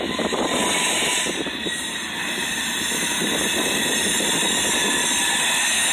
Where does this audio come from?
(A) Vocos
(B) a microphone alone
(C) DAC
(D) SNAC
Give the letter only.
B